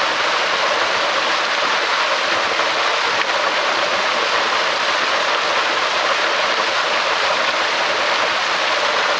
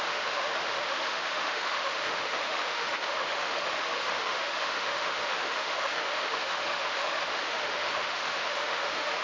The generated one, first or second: second